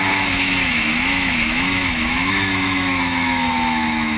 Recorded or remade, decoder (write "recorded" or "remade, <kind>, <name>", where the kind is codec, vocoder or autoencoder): remade, autoencoder, DAC-VAE